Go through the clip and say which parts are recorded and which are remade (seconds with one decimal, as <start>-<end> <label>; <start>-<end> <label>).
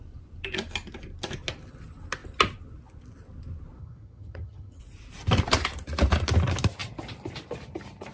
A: 0.0-3.8 recorded; 3.8-4.8 remade; 4.8-8.1 recorded